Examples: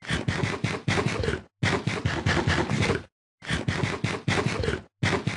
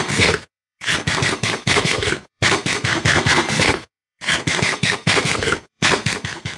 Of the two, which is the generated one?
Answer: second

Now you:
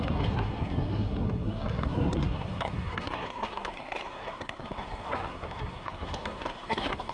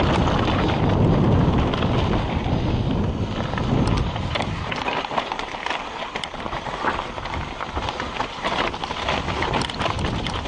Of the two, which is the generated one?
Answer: first